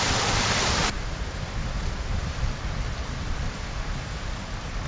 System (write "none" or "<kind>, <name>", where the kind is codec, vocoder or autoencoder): none